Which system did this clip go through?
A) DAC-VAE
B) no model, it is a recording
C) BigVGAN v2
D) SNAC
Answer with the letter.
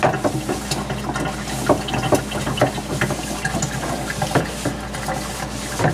B